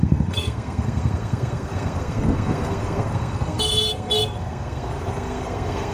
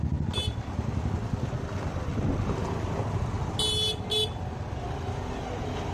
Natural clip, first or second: second